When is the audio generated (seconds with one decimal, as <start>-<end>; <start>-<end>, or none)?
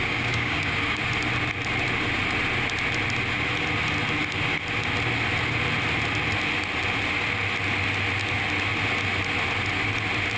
0.0-1.0